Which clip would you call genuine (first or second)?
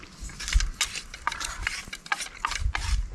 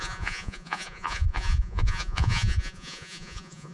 first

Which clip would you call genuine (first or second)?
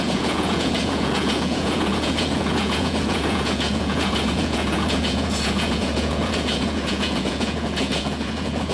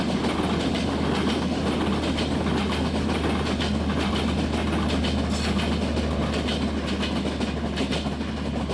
second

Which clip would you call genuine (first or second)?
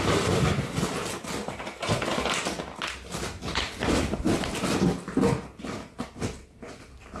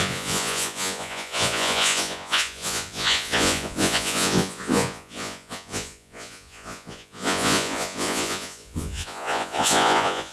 first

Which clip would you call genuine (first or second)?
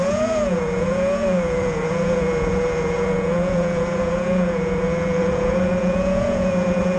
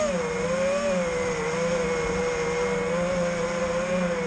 second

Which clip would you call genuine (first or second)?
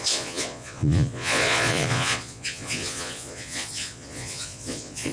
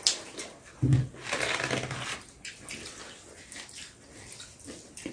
second